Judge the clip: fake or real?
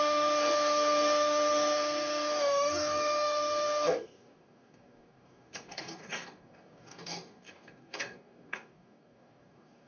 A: fake